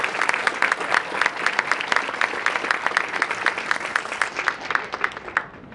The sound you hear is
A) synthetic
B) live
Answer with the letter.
B